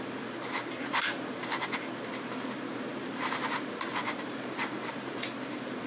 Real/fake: fake